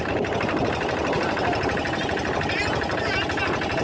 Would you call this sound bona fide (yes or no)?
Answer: yes